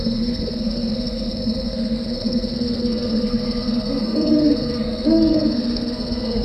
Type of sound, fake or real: fake